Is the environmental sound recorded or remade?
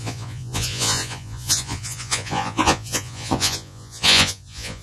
remade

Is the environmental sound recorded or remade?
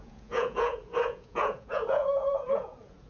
remade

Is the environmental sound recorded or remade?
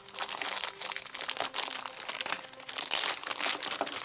recorded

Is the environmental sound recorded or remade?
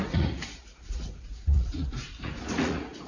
remade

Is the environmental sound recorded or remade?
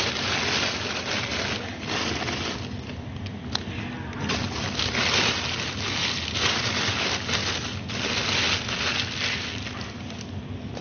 recorded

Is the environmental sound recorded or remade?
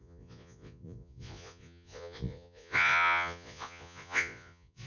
remade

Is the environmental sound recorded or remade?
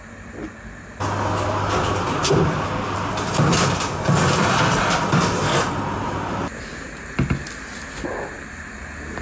recorded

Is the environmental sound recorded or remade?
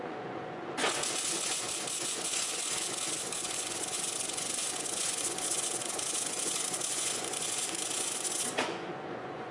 remade